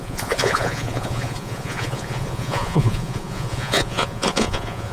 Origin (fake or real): fake